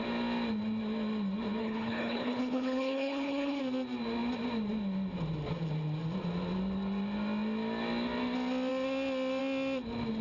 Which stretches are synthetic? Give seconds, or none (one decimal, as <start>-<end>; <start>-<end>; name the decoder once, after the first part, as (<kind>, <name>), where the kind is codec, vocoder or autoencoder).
1.6-3.6 (codec, HILCodec)